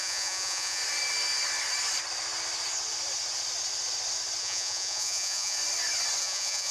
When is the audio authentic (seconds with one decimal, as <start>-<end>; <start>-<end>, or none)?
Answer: 0.8-4.4; 5.6-6.2